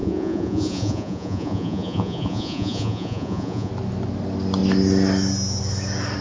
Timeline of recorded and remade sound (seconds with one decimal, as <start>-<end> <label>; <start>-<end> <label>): 0.0-3.7 remade; 3.7-6.2 recorded